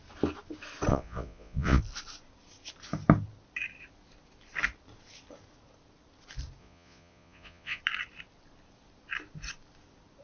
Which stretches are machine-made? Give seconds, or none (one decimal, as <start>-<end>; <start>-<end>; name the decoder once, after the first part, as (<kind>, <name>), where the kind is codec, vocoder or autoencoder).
0.9-1.8 (vocoder, Vocos); 6.6-7.8